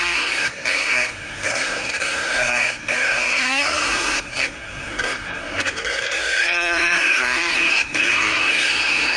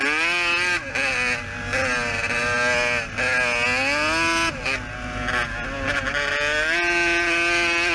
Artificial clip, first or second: first